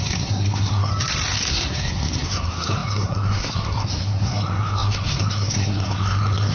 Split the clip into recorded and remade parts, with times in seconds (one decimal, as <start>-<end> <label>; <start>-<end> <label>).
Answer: 0.0-0.9 remade; 0.9-1.5 recorded; 1.5-6.5 remade